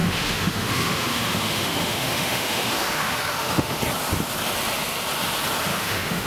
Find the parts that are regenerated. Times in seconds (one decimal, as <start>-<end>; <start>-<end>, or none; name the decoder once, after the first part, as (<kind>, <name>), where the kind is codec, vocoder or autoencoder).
0.0-3.8 (autoencoder, DAC-VAE); 5.7-6.3